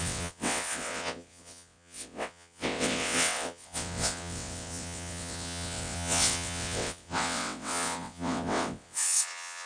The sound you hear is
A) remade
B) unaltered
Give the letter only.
A